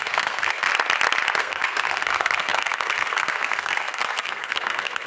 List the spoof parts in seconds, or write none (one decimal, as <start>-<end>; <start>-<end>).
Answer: 0.0-0.7; 1.4-5.1